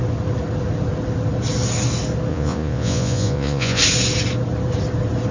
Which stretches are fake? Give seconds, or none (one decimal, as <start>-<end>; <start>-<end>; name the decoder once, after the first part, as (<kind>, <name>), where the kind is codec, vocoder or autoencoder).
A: 2.3-3.8 (vocoder, Vocos)